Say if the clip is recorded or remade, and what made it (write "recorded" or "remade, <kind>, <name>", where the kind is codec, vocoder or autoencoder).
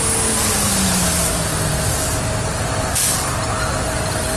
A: recorded